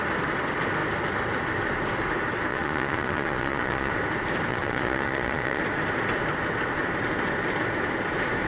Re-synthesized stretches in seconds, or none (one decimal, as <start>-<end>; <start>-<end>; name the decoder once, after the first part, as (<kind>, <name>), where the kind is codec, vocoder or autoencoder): 2.5-3.9 (vocoder, Vocos); 4.5-5.6